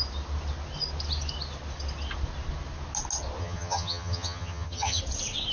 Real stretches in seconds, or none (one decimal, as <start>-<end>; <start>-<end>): 0.0-3.4; 5.0-5.5